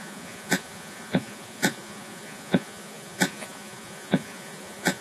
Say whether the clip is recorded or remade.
remade